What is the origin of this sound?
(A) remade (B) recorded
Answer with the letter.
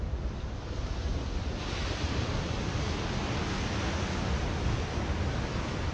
B